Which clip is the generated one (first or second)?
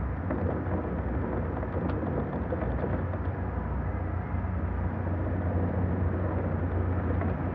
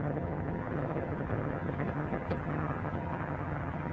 second